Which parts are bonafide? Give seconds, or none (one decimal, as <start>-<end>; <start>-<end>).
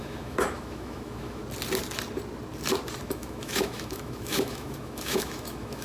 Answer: 1.4-3.0